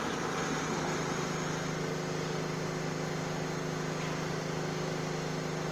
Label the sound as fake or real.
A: real